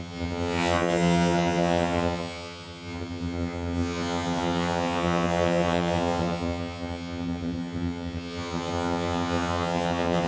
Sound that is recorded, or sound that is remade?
remade